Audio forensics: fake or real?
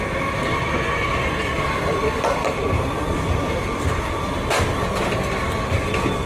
real